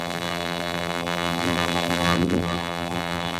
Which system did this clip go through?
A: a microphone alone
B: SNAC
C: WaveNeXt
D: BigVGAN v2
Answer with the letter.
D